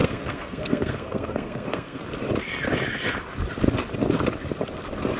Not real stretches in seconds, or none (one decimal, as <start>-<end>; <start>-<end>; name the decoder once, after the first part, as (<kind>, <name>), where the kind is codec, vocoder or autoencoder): 0.0-2.0 (codec, SNAC)